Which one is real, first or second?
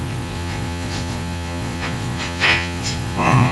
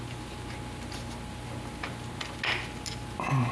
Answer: second